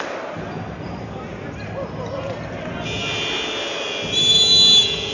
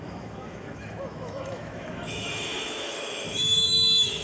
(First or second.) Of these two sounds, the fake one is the second